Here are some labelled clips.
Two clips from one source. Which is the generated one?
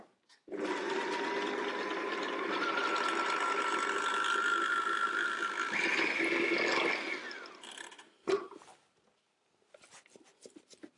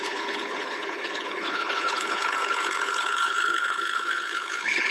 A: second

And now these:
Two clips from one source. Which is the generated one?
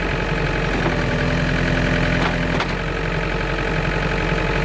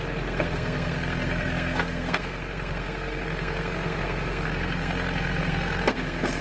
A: second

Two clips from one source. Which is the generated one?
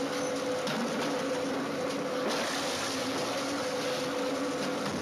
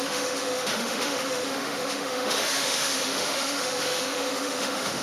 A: second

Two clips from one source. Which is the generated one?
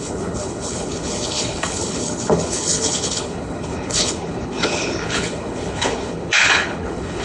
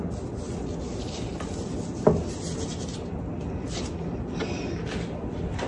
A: first